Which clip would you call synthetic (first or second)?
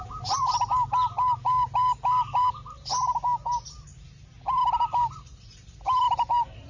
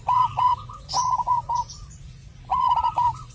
second